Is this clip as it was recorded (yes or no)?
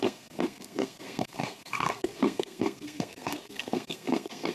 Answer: no